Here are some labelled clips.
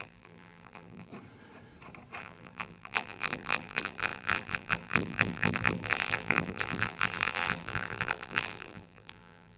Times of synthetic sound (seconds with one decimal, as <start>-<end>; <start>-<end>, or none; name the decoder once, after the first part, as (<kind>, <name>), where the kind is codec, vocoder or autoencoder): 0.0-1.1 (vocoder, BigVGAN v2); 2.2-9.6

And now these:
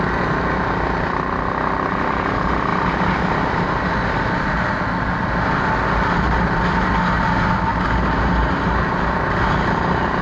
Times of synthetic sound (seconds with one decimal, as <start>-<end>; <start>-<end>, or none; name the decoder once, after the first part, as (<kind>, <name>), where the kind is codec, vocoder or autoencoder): none

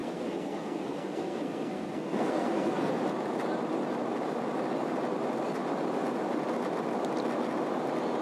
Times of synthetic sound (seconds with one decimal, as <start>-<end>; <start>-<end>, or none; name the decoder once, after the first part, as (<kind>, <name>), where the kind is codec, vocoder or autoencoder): 0.0-2.9 (codec, SNAC)

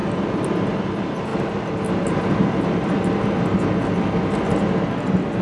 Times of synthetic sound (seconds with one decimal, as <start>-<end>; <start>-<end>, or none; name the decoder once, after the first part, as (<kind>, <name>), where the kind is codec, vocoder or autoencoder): none

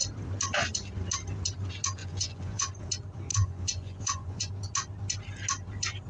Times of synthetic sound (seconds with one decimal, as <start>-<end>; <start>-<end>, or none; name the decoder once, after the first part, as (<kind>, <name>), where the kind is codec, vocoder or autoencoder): 2.0-2.7 (vocoder, Vocos); 3.3-4.5

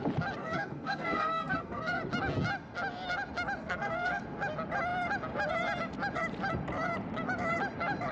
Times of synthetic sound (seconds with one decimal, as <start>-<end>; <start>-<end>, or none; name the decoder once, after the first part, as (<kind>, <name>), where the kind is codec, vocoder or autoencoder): 0.4-2.0 (codec, SNAC); 3.6-4.2